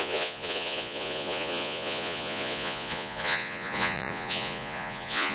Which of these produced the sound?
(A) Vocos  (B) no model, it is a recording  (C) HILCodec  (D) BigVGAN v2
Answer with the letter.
A